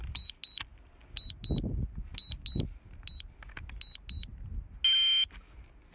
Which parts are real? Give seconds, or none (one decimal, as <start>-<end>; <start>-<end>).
0.0-5.9